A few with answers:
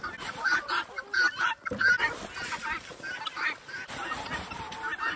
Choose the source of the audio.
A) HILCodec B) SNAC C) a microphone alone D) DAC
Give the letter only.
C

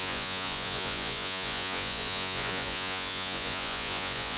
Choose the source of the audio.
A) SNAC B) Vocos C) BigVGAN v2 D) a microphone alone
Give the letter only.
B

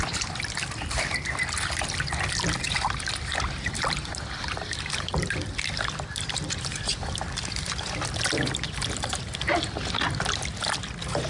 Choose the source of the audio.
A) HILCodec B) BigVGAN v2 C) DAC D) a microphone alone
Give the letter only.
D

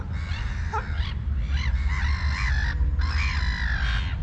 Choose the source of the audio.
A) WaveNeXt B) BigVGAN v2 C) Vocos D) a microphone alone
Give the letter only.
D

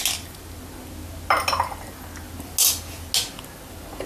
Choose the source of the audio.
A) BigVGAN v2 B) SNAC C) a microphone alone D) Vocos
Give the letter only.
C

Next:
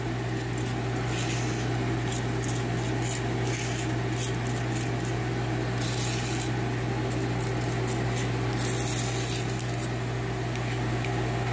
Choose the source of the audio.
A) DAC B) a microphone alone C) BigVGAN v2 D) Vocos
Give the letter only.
B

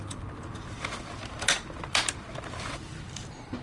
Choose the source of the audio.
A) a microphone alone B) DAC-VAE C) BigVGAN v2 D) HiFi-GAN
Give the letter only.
C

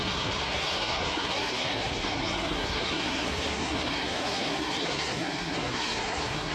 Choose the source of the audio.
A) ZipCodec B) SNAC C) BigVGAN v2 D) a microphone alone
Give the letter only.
B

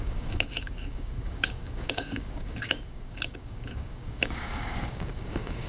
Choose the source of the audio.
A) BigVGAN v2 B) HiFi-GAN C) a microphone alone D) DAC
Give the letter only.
D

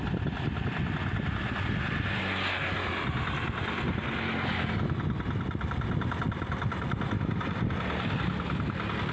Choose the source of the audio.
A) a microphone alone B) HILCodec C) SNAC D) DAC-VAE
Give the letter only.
A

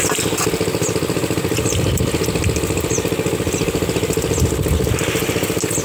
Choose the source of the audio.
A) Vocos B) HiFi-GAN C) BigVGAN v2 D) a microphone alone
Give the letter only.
D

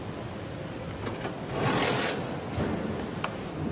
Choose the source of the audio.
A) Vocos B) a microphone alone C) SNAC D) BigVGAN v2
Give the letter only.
B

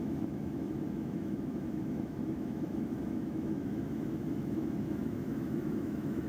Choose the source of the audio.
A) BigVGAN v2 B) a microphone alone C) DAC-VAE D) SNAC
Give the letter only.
C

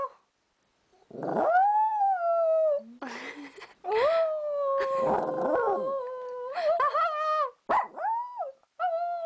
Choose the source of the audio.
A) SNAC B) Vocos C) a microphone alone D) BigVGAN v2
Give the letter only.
C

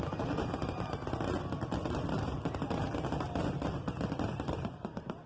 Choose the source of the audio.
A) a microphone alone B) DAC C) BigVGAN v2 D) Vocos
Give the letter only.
A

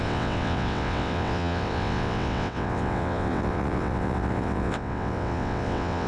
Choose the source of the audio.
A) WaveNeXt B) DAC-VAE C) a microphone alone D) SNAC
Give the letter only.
A